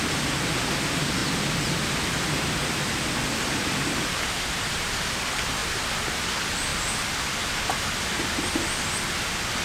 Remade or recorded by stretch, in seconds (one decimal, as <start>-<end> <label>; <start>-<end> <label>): 0.0-9.6 recorded